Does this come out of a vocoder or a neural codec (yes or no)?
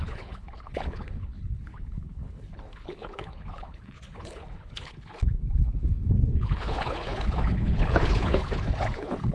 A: yes